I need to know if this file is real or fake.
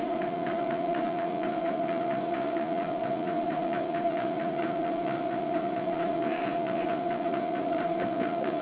fake